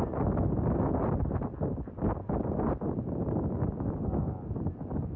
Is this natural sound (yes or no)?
yes